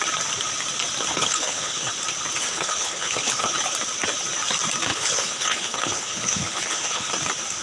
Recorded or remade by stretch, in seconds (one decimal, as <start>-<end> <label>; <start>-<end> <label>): 0.0-1.1 recorded; 1.1-1.9 remade; 1.9-2.4 recorded; 2.4-3.5 remade; 3.5-4.9 recorded; 4.9-7.1 remade; 7.1-7.6 recorded